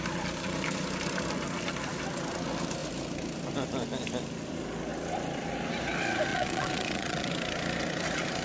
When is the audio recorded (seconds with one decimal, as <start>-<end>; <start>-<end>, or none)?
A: 0.0-6.3; 7.3-8.4